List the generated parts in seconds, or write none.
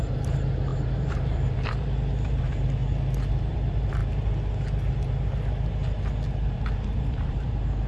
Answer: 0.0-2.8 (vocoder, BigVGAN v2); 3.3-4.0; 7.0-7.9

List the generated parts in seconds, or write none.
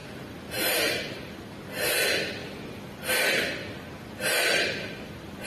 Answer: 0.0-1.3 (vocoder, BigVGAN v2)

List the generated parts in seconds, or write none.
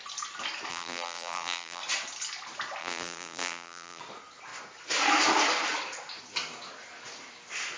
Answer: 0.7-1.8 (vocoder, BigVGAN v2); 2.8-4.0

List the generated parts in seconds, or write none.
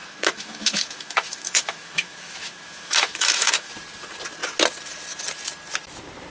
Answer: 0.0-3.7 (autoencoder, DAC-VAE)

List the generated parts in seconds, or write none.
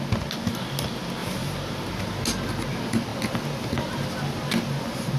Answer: 1.2-2.1 (vocoder, BigVGAN v2)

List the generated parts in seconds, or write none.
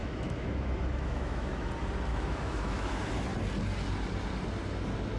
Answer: 0.0-1.7 (autoencoder, DAC-VAE); 2.1-3.0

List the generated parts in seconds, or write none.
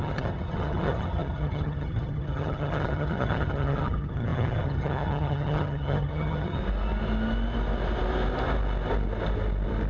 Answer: 0.0-6.6 (vocoder, HiFi-GAN)